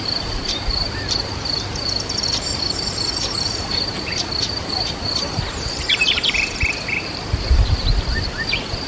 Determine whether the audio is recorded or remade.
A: remade